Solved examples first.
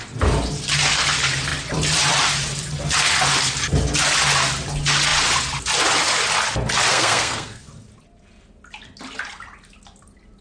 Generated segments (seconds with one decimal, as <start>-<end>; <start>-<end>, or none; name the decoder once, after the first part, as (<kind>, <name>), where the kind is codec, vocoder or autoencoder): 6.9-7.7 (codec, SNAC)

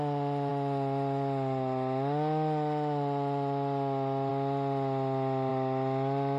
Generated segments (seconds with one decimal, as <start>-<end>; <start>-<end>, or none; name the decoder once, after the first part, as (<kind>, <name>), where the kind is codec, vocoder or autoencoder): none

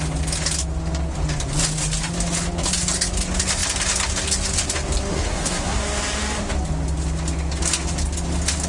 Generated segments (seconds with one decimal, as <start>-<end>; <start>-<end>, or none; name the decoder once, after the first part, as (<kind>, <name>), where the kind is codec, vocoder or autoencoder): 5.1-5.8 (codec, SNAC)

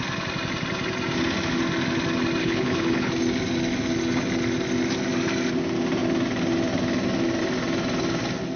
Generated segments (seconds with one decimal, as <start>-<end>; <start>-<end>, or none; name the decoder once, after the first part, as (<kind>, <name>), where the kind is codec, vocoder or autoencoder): 2.4-3.1 (codec, HILCodec)

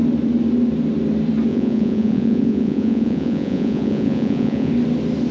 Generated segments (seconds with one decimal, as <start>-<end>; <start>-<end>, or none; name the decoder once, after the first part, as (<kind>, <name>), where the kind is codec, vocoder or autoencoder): 1.5-4.7 (vocoder, Vocos)